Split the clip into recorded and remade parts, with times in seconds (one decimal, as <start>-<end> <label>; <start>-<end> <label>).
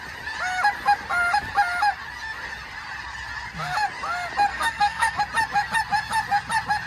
0.0-4.5 recorded; 4.5-5.2 remade; 5.2-6.9 recorded